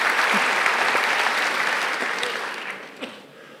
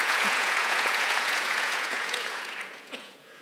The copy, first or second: second